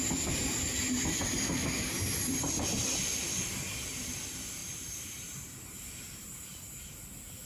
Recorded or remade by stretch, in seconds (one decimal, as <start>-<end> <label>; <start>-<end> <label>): 0.0-4.6 recorded; 4.6-6.9 remade; 6.9-7.5 recorded